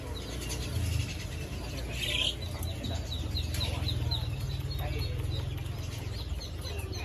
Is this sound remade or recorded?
recorded